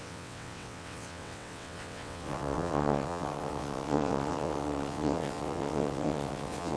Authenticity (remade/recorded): remade